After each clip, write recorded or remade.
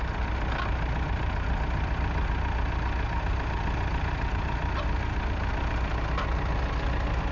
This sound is recorded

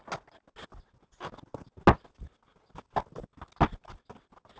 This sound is recorded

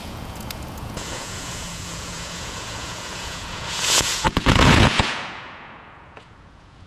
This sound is remade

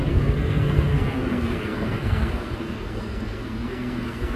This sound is remade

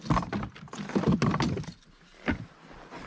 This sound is recorded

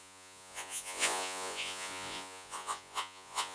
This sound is remade